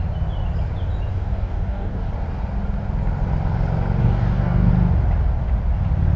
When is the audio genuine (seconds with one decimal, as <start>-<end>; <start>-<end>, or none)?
0.0-1.1; 2.1-4.0; 4.7-6.2